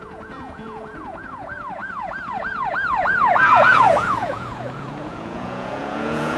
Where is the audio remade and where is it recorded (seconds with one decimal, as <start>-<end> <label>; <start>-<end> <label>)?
0.0-6.4 remade